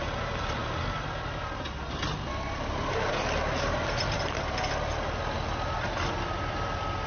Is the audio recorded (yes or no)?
yes